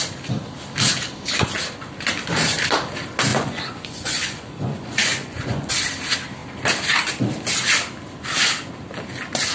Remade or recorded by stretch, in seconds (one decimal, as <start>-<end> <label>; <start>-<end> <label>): 0.0-3.3 recorded; 3.3-5.7 remade; 5.7-9.5 recorded